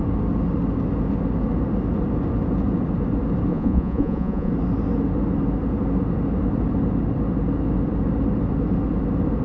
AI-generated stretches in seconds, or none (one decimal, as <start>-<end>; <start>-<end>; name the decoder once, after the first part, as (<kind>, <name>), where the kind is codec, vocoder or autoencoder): 3.5-4.5 (vocoder, Vocos)